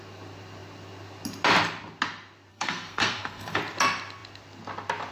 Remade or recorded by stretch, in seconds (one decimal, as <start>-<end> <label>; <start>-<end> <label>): 0.0-2.5 recorded; 2.5-3.6 remade; 3.6-5.1 recorded